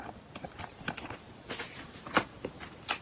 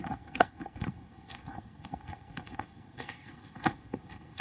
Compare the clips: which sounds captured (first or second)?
first